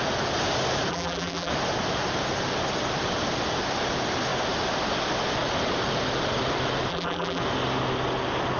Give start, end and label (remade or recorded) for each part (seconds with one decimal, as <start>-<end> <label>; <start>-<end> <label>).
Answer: 0.0-0.9 recorded; 0.9-1.5 remade; 1.5-6.9 recorded; 6.9-7.4 remade; 7.4-8.6 recorded